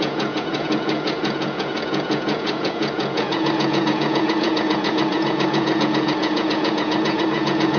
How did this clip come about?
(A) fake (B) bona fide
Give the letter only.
A